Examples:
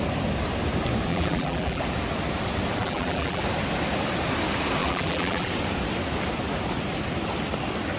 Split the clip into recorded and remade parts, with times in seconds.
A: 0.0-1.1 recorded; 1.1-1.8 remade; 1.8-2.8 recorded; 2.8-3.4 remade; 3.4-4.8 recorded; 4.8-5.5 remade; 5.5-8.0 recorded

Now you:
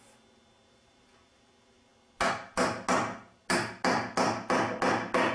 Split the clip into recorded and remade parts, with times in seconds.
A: 0.0-5.3 recorded

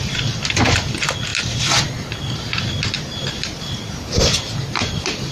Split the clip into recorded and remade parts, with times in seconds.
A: 0.0-5.3 recorded

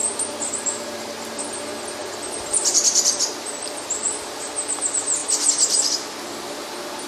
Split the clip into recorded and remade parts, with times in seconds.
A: 0.0-1.5 remade; 1.5-2.0 recorded; 2.0-4.5 remade; 4.5-7.1 recorded

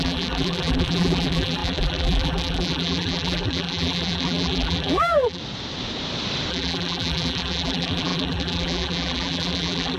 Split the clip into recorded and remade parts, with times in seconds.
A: 0.0-5.4 remade; 5.4-6.5 recorded; 6.5-10.0 remade

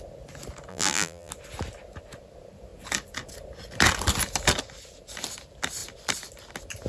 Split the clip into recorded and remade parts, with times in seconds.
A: 0.0-0.7 recorded; 0.7-1.3 remade; 1.3-6.9 recorded

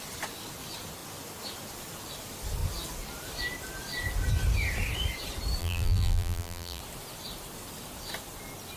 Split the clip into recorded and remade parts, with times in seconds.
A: 0.0-5.6 recorded; 5.6-6.8 remade; 6.8-8.8 recorded